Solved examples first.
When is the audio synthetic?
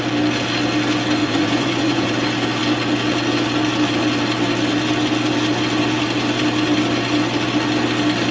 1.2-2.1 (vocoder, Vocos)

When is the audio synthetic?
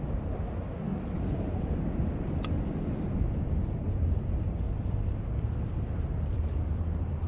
none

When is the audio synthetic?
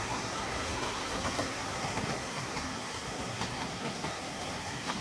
0.0-5.0 (codec, SNAC)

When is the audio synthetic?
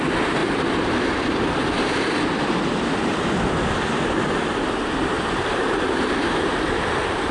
0.0-0.4 (vocoder, BigVGAN v2); 4.8-7.3